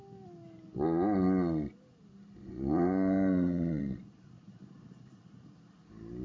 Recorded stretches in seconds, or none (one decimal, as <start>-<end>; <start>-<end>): 0.0-2.4; 3.8-6.2